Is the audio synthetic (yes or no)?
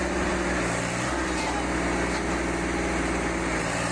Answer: no